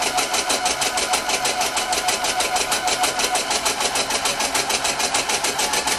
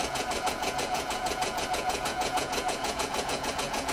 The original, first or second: first